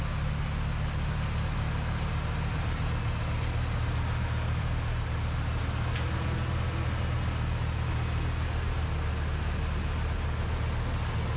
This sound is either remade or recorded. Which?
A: recorded